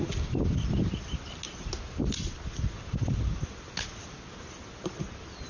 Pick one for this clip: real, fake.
real